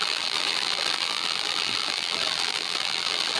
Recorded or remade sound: remade